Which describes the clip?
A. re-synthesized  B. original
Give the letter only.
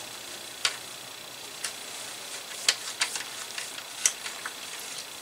B